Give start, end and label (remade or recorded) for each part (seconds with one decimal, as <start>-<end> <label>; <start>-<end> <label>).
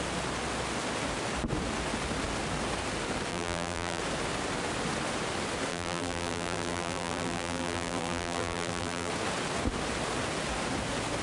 0.0-3.3 recorded; 3.3-4.0 remade; 4.0-5.7 recorded; 5.7-9.1 remade; 9.1-11.2 recorded